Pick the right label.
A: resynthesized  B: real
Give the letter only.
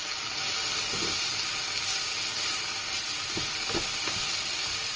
B